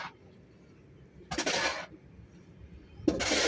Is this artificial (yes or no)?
no